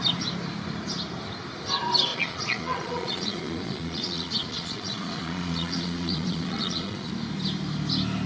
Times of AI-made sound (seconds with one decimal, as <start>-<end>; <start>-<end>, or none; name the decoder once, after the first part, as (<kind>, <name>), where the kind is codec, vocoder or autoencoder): 2.1-7.1 (vocoder, Vocos)